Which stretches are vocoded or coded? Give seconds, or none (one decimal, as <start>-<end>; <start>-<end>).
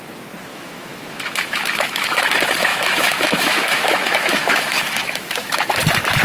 0.5-2.3; 2.7-5.7